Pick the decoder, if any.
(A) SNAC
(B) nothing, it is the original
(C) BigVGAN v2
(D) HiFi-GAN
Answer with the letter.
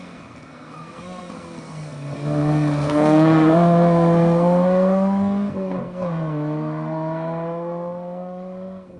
A